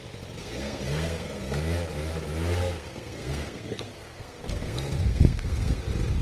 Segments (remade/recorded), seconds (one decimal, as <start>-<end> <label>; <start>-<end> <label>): 0.0-0.4 recorded; 0.4-1.4 remade; 1.4-2.6 recorded; 2.6-5.8 remade; 5.8-6.2 recorded